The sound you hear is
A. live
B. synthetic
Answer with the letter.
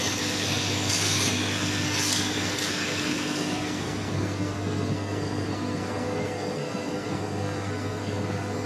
B